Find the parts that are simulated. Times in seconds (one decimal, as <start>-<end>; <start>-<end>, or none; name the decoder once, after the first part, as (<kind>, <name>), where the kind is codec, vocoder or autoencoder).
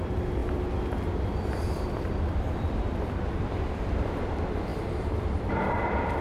0.0-0.4 (vocoder, BigVGAN v2); 1.7-6.2